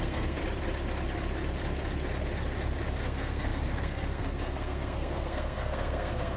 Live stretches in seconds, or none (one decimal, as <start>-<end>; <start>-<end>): 0.4-3.0